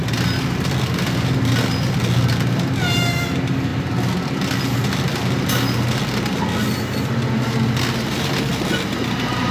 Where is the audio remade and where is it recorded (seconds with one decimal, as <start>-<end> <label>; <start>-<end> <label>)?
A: 0.0-9.5 recorded